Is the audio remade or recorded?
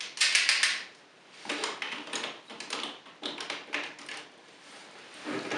recorded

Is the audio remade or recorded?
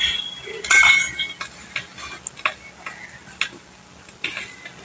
recorded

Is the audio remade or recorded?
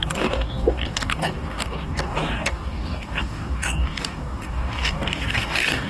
remade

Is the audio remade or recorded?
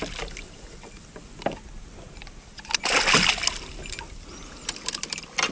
recorded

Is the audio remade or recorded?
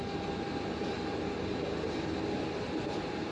recorded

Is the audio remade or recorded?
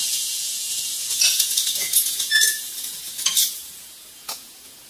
remade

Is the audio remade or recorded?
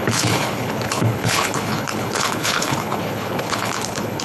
remade